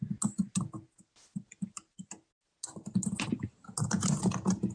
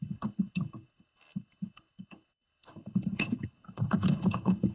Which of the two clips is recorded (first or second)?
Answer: first